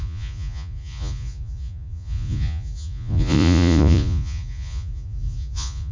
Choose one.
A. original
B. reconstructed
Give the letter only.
B